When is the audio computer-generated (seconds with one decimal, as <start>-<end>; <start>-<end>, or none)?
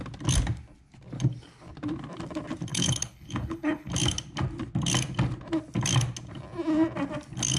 2.7-3.9